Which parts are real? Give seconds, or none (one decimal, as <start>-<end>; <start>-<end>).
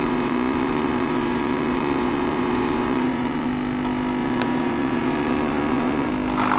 3.5-4.2; 6.1-6.6